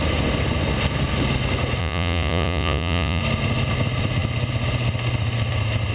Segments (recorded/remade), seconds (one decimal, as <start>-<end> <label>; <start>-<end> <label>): 0.0-1.8 recorded; 1.8-3.2 remade; 3.2-5.9 recorded